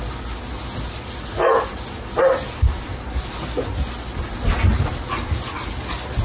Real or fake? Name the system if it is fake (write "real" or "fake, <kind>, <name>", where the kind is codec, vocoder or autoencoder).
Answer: real